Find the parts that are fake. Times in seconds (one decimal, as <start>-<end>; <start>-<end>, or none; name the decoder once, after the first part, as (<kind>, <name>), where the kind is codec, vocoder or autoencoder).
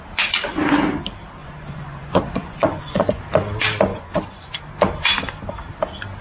1.4-3.2 (vocoder, Vocos); 3.9-4.6